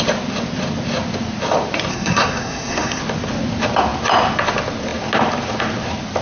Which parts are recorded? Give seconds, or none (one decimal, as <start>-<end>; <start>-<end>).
0.0-1.9; 3.0-6.2